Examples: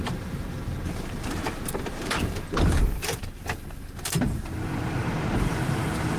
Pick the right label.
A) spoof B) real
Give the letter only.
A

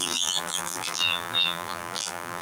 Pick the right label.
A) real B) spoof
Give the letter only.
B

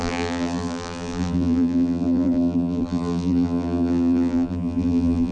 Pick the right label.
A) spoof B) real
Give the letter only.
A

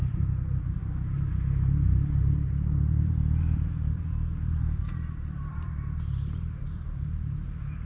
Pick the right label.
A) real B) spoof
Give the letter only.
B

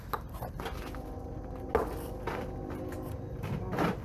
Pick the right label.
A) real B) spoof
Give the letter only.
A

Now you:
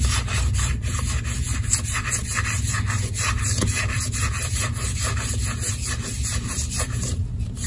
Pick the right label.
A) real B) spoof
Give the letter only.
B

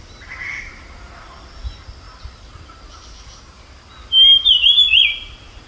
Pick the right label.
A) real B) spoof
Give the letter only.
A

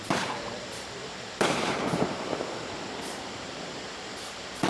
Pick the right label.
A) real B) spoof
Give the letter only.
B